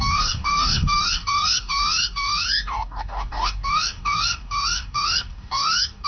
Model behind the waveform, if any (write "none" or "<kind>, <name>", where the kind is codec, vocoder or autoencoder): codec, DAC